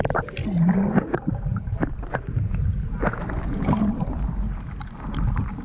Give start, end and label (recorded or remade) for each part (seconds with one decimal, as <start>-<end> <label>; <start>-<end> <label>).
0.0-0.4 remade; 0.4-1.4 recorded; 1.4-5.6 remade